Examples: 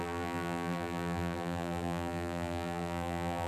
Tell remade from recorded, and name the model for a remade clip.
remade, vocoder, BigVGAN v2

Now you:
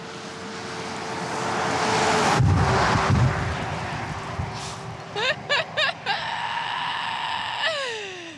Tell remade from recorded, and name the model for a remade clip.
recorded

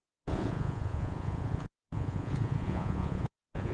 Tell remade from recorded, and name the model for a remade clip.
remade, vocoder, Vocos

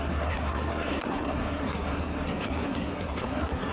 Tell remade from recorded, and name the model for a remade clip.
remade, codec, SNAC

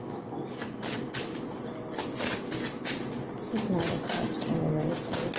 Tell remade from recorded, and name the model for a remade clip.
recorded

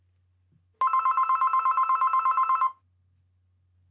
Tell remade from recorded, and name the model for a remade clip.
recorded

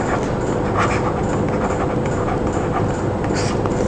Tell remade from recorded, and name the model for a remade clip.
recorded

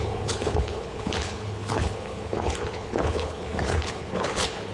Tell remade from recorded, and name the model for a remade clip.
remade, codec, HILCodec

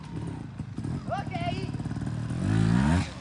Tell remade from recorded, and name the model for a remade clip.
recorded